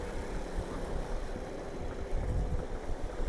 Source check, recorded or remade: recorded